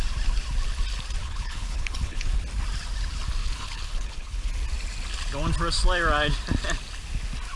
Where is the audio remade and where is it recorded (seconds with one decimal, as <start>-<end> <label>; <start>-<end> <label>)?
0.0-1.2 recorded; 1.2-2.4 remade; 2.4-3.4 recorded; 3.4-4.5 remade; 4.5-7.6 recorded